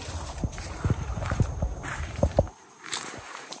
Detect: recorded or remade remade